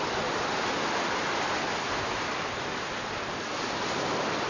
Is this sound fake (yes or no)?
no